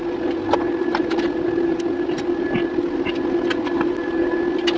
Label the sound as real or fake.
real